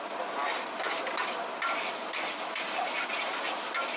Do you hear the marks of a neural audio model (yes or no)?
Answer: no